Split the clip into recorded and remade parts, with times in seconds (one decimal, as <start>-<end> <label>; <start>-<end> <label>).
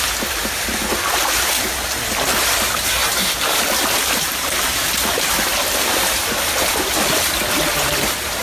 0.0-3.1 recorded; 3.1-4.8 remade; 4.8-8.4 recorded